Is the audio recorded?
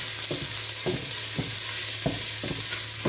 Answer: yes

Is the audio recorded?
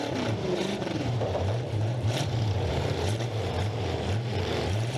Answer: no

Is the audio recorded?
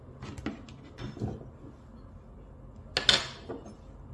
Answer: yes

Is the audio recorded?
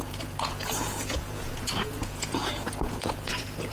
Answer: no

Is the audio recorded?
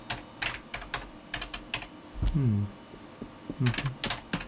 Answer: yes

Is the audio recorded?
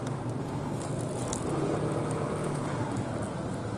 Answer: yes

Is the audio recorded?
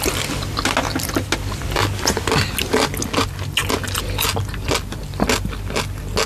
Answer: yes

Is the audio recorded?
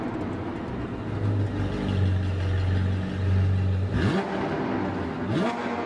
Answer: yes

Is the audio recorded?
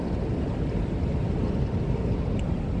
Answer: yes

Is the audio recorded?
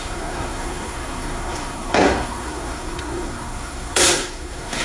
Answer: no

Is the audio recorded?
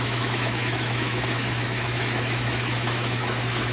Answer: no